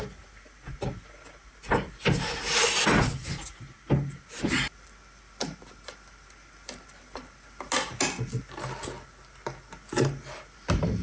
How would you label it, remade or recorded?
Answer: recorded